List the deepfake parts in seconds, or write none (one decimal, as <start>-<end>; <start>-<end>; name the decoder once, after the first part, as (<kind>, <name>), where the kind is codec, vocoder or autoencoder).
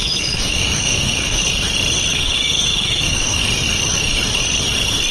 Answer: 0.0-1.4 (autoencoder, DAC-VAE); 2.1-3.4